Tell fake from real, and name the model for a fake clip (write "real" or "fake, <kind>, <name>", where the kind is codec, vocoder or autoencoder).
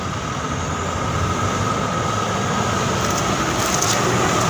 real